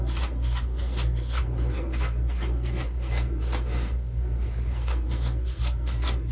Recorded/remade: remade